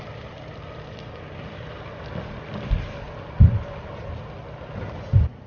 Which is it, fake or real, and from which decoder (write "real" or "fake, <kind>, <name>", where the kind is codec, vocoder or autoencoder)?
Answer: real